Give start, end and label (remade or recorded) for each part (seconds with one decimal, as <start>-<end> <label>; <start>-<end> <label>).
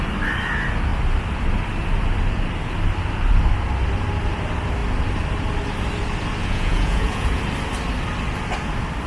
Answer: 0.0-6.4 recorded; 6.4-7.4 remade; 7.4-9.1 recorded